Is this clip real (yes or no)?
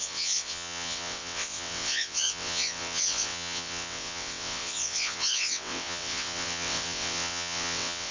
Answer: no